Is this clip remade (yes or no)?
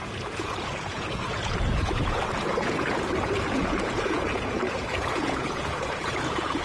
yes